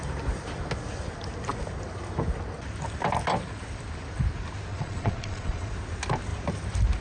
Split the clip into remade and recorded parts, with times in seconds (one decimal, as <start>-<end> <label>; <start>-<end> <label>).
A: 0.0-4.7 recorded; 4.7-5.7 remade; 5.7-7.0 recorded